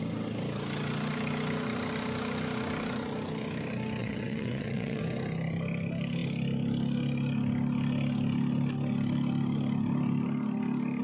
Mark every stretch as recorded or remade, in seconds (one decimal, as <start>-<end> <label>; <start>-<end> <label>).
0.0-4.0 recorded; 4.0-5.0 remade; 5.0-11.0 recorded